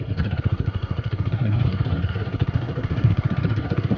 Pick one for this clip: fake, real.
fake